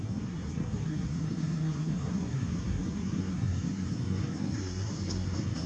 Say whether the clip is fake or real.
fake